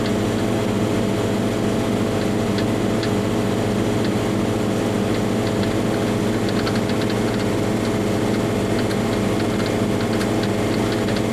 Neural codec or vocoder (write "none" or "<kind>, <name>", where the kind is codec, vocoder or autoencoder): none